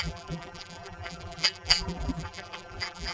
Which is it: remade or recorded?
remade